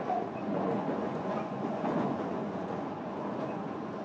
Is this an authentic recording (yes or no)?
no